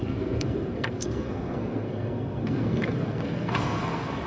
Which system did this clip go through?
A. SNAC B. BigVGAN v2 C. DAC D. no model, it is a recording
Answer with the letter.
A